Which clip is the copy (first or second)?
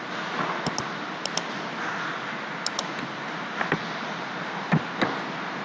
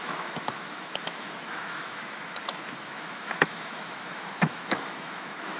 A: second